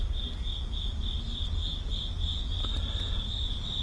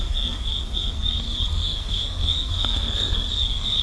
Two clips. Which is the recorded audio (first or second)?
first